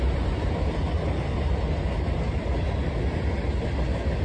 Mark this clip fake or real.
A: real